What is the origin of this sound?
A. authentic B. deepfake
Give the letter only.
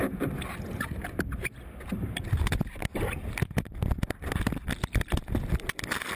A